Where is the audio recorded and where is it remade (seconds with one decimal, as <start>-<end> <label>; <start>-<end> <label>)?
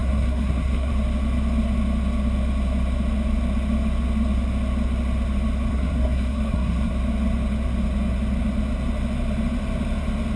0.0-0.9 remade; 0.9-5.7 recorded; 5.7-6.9 remade; 6.9-10.4 recorded